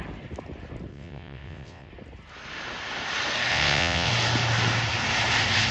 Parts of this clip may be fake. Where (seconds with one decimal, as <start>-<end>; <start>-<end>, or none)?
0.9-1.9; 3.5-4.1